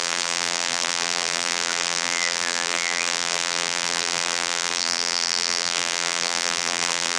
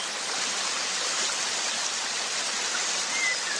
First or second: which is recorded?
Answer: second